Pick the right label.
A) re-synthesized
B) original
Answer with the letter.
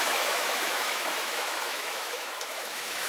A